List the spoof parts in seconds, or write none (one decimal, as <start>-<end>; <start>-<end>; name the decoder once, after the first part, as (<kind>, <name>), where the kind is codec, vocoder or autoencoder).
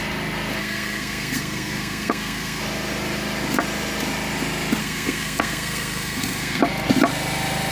0.6-2.6 (codec, SNAC); 4.8-6.6